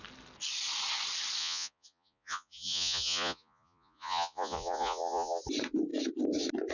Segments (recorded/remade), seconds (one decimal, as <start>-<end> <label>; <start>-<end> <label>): 0.0-1.4 recorded; 1.4-5.4 remade; 5.4-6.7 recorded